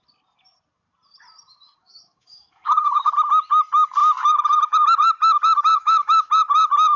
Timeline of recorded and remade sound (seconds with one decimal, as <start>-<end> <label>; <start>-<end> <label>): 0.0-1.8 recorded; 1.8-3.1 remade; 3.1-5.8 recorded; 5.8-6.3 remade; 6.3-7.0 recorded

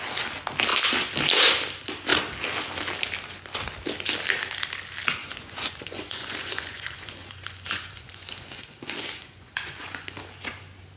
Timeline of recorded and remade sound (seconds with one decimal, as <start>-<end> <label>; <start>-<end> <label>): 0.0-5.2 recorded; 5.2-10.2 remade; 10.2-11.0 recorded

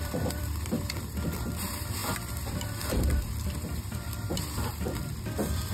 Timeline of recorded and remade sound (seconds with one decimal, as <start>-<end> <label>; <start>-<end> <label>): 0.0-5.7 remade